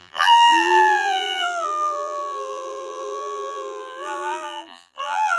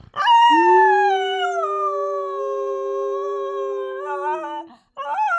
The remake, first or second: first